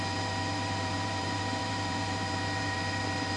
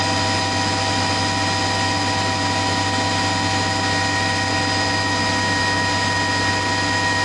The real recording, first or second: second